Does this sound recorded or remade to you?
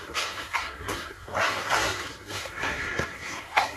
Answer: remade